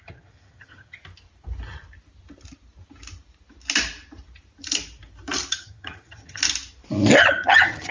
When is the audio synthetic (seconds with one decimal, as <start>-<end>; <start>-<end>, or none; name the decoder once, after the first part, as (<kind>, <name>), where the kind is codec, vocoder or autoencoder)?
0.0-1.0 (vocoder, HiFi-GAN); 5.5-6.4; 7.2-7.9